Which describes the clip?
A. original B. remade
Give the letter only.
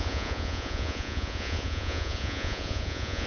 B